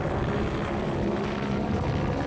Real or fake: real